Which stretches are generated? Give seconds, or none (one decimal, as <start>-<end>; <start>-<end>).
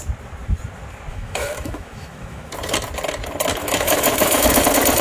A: 1.1-2.5; 3.6-4.6